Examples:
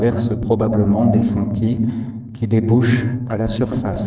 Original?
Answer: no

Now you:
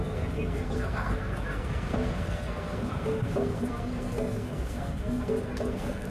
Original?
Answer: no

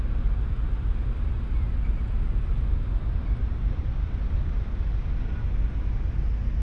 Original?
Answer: yes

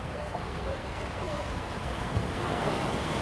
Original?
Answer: no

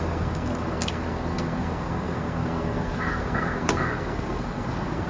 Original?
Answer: no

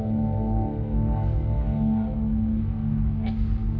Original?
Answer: no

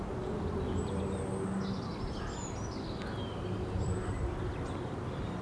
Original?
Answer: yes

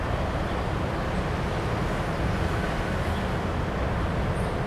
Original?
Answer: yes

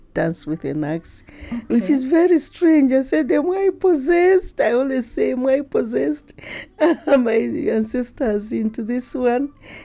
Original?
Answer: yes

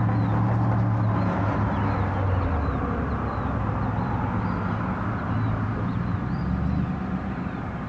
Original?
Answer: yes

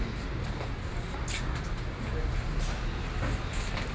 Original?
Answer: yes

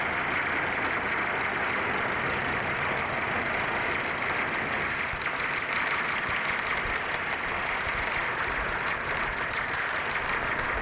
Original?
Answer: yes